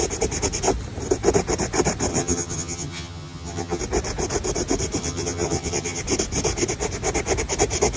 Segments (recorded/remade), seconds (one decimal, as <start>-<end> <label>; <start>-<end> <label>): 0.0-2.1 recorded; 2.1-3.8 remade; 3.8-5.0 recorded; 5.0-6.0 remade; 6.0-8.0 recorded